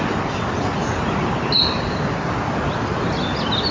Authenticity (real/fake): real